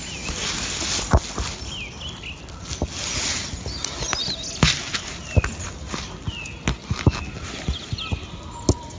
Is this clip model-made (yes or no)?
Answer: no